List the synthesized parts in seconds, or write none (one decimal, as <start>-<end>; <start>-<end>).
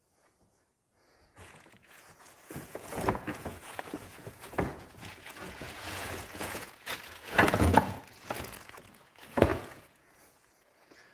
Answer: 0.0-11.1